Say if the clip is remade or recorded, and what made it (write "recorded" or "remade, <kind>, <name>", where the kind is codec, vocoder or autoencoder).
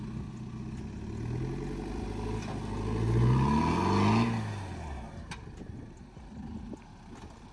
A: recorded